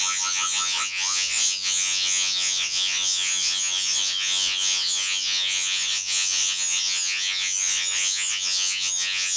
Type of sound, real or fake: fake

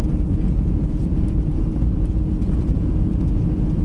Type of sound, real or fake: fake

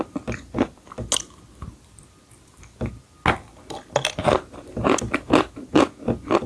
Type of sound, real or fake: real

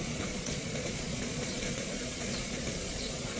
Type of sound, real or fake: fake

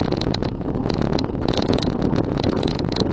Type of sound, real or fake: fake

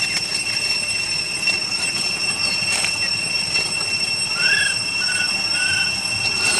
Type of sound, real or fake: real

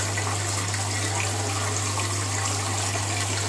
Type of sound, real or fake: real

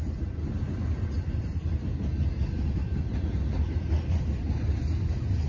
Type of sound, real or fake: real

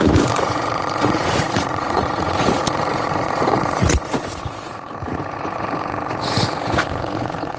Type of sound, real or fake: fake